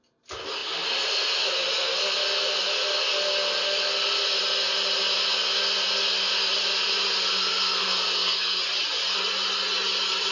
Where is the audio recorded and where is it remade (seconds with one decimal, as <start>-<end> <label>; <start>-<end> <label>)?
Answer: 0.0-7.5 recorded; 7.5-8.6 remade; 8.6-10.3 recorded